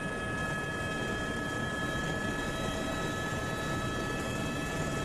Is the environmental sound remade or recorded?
recorded